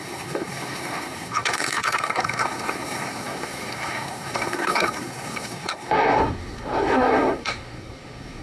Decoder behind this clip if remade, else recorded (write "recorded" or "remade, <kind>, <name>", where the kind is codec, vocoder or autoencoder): remade, codec, SNAC